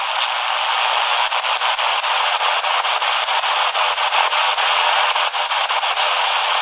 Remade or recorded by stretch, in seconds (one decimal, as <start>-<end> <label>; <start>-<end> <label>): 0.0-1.9 recorded; 1.9-2.9 remade; 2.9-3.3 recorded; 3.3-6.6 remade